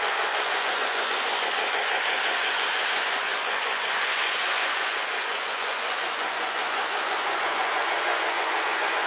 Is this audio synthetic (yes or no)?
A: yes